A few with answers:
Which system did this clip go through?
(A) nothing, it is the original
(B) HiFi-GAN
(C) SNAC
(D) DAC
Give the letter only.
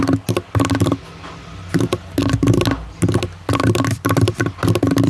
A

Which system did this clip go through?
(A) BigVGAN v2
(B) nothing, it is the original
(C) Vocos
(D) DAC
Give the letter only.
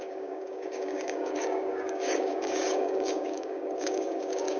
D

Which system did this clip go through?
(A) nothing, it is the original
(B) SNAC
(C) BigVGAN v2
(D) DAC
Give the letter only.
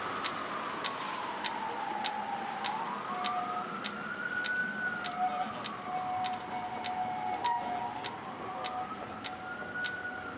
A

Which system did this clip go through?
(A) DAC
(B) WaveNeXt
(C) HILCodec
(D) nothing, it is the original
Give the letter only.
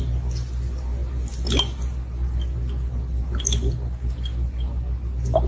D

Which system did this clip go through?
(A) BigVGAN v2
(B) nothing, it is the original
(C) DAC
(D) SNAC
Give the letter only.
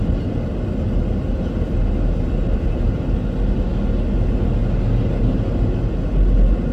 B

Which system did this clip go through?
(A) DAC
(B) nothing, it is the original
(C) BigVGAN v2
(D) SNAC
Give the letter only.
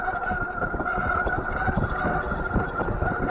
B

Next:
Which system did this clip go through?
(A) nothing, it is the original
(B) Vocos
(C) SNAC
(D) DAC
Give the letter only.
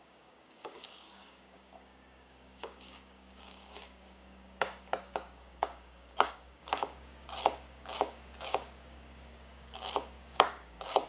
D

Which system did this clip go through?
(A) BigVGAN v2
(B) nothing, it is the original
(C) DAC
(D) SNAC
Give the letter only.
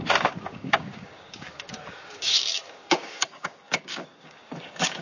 C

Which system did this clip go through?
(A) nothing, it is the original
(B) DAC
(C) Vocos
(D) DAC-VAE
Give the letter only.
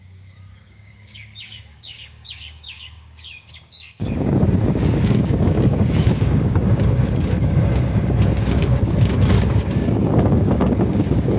B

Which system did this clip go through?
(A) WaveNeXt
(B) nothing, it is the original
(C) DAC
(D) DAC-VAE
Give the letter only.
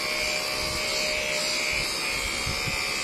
B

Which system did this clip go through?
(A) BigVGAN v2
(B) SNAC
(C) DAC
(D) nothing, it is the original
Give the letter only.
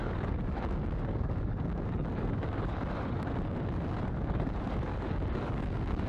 C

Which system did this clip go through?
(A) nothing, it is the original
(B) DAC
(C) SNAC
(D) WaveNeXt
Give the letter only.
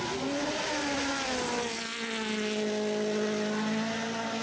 A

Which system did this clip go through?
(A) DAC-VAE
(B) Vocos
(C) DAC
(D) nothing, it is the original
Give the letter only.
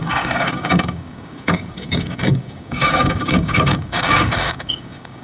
C